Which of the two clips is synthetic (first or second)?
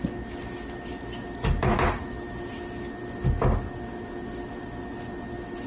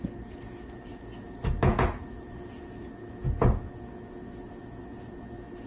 second